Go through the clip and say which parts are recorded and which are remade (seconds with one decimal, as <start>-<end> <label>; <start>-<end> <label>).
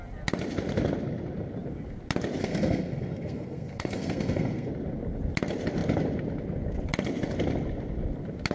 0.0-2.4 recorded; 2.4-4.7 remade; 4.7-8.5 recorded